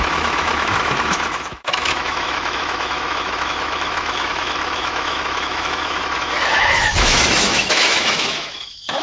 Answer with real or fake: fake